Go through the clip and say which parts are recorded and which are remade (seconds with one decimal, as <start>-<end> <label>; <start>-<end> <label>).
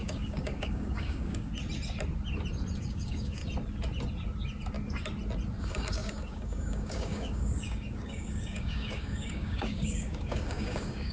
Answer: 0.0-1.5 remade; 1.5-2.8 recorded; 2.8-3.4 remade; 3.4-5.6 recorded; 5.6-11.1 remade